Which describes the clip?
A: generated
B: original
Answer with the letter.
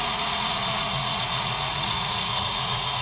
A